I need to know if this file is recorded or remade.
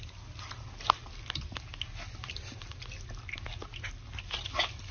recorded